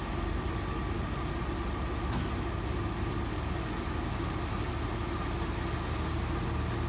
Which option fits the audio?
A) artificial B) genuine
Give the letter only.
B